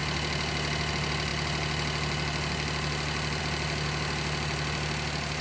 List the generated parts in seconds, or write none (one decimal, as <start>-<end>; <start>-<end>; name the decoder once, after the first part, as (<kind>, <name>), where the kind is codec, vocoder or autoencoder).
none